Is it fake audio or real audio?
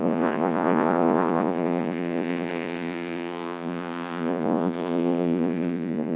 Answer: fake